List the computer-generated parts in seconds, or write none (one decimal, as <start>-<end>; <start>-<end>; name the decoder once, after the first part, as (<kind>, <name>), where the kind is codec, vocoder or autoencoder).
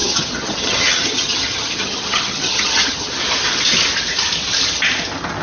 0.0-3.1 (vocoder, HiFi-GAN)